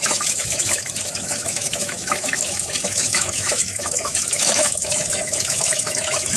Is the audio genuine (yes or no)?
no